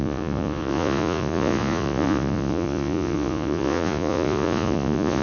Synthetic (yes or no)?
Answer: yes